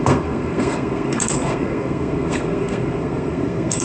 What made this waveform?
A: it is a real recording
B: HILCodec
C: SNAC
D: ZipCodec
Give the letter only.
C